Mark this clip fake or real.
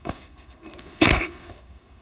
fake